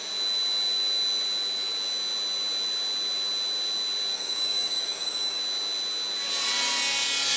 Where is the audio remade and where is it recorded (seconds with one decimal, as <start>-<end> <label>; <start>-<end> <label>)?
0.0-4.1 recorded; 4.1-5.4 remade; 5.4-7.4 recorded